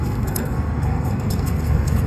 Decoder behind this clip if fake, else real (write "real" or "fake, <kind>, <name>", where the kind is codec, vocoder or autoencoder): fake, codec, SNAC